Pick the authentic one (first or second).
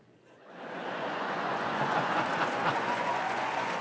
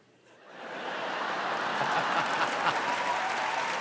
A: second